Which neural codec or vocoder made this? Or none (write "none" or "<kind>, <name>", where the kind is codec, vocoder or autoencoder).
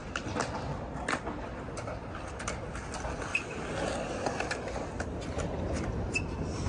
none